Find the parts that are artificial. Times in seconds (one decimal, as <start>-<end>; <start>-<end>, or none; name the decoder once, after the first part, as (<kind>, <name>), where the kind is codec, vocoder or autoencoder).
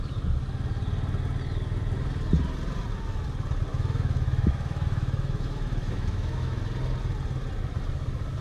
3.7-6.6 (autoencoder, DAC-VAE)